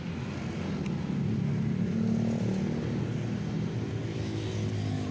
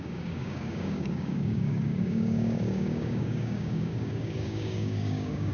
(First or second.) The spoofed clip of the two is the second